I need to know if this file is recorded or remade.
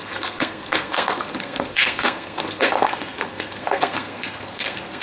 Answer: remade